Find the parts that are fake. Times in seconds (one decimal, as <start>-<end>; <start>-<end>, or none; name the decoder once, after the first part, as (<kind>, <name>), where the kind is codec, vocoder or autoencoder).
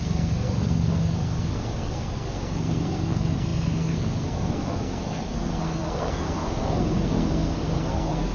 0.0-8.3 (codec, SNAC)